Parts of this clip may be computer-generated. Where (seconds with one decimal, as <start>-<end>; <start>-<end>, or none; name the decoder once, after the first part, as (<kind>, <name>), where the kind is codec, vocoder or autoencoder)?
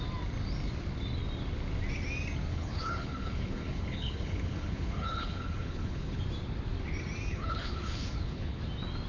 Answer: 2.5-6.2 (codec, HILCodec); 7.3-8.6